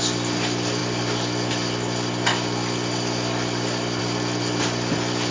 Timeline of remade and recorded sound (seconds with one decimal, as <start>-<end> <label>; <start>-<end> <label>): 0.0-5.3 recorded